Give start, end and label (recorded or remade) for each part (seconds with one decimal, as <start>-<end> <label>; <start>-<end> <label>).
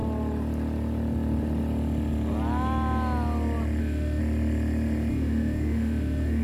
0.0-3.8 recorded; 3.8-4.2 remade; 4.2-5.1 recorded; 5.1-6.4 remade